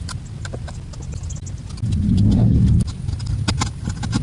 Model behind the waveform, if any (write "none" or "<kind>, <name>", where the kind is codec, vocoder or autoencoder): none